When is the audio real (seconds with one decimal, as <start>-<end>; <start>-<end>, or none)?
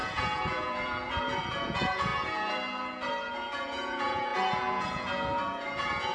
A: 2.1-3.1